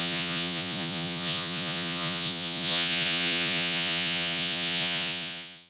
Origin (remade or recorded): remade